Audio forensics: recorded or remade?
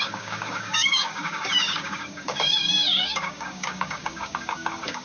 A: remade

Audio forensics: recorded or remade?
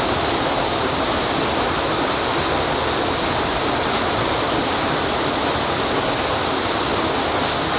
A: recorded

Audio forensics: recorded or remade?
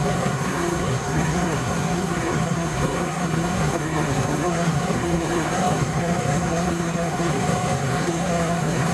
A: remade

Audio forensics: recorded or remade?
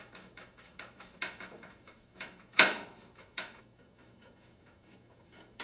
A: remade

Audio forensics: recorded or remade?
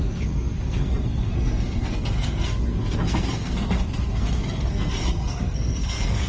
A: remade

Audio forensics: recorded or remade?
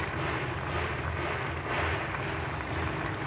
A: recorded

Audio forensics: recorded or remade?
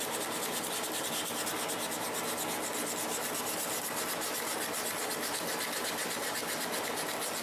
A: recorded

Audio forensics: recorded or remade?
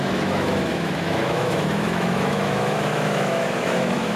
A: remade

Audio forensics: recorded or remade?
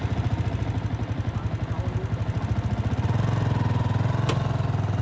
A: recorded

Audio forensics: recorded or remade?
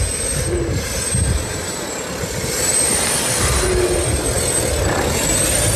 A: recorded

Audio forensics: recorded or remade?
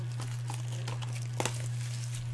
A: recorded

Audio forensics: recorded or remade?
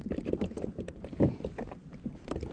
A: remade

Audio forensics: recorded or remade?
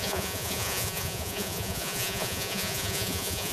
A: remade